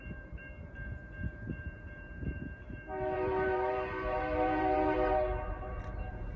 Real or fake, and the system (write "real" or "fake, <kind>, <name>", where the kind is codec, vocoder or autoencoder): fake, vocoder, BigVGAN v2